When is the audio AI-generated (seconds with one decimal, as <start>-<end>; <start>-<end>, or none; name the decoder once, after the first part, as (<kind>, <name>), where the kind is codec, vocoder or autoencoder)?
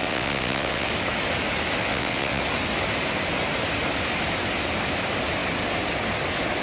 0.0-0.9 (vocoder, WaveNeXt); 1.8-2.4